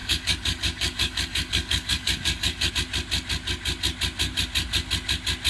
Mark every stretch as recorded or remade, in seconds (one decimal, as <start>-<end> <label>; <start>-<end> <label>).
0.0-2.7 remade; 2.7-5.5 recorded